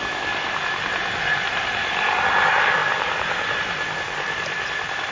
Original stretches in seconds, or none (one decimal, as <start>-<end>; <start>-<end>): 0.0-2.8; 3.6-5.1